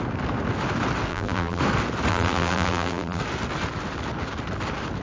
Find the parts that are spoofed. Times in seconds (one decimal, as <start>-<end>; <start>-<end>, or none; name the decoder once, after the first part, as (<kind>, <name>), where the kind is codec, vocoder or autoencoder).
1.1-1.6 (vocoder, BigVGAN v2); 2.1-3.2

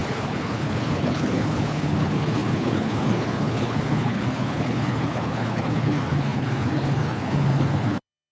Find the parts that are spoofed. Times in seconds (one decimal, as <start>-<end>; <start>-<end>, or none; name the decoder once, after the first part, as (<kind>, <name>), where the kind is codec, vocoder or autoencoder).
0.0-8.3 (codec, HILCodec)

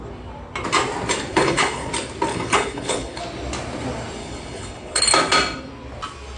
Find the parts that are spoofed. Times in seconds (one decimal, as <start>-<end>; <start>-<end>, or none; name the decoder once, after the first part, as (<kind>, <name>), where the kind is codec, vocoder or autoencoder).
1.3-1.9 (codec, HILCodec); 2.3-3.2; 4.2-5.0